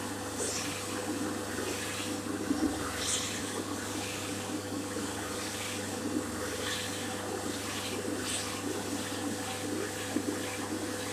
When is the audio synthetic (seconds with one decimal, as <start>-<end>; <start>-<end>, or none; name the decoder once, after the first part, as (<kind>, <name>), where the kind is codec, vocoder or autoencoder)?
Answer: 3.4-6.0 (codec, DAC)